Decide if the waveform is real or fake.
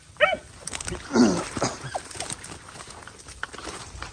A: real